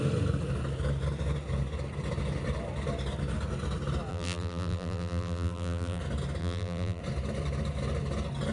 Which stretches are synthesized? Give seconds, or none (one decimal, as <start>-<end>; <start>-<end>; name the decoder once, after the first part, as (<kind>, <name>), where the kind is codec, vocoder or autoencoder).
4.1-6.0 (vocoder, BigVGAN v2); 6.4-7.0